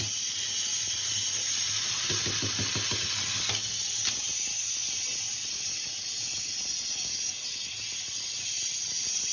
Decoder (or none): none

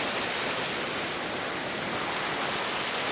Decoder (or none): none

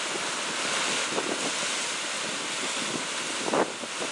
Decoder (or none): none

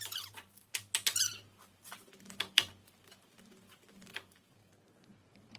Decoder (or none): vocoder, BigVGAN v2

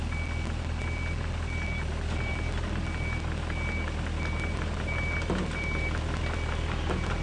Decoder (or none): none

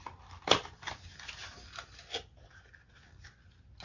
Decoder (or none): none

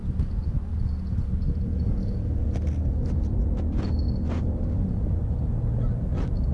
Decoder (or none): none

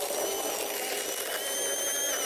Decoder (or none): none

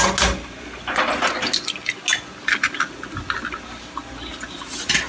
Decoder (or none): none